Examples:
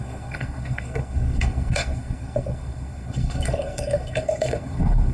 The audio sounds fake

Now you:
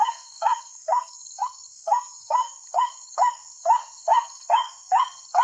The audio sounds fake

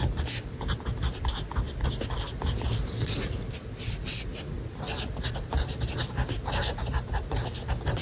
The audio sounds real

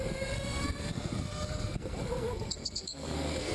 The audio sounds fake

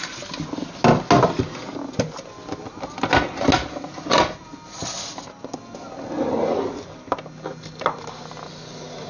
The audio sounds real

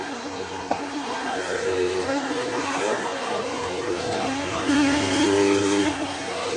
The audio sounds fake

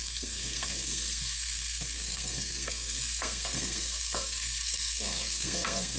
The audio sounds fake